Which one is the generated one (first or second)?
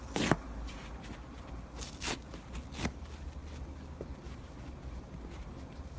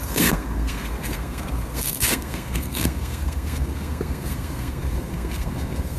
second